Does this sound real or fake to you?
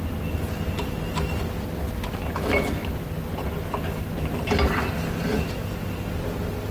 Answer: real